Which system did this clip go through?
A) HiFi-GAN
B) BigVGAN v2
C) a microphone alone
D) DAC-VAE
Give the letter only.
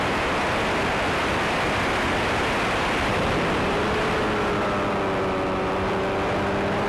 B